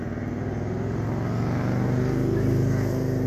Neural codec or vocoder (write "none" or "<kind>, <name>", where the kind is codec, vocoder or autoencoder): none